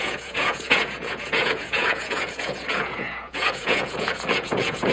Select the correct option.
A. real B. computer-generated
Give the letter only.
B